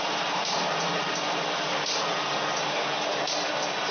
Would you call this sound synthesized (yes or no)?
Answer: no